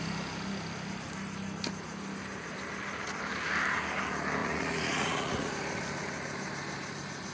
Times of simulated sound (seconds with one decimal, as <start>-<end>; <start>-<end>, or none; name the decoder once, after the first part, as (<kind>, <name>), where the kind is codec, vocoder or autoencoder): 4.4-5.5 (vocoder, Vocos)